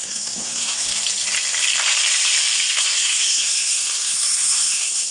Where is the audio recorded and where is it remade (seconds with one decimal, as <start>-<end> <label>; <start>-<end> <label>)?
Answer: 0.0-0.9 remade; 0.9-2.7 recorded; 2.7-5.1 remade